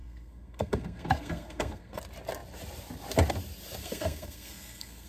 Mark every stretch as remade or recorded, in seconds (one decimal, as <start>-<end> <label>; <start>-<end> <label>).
0.0-2.0 remade; 2.0-3.8 recorded; 3.8-5.1 remade